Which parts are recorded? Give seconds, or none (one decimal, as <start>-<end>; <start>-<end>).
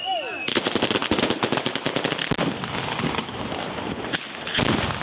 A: 0.0-5.0